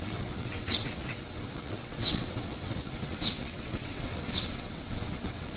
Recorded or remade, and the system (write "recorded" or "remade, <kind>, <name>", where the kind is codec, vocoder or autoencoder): remade, vocoder, WaveNeXt